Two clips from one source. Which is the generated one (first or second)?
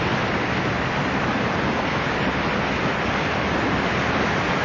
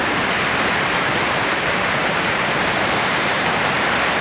second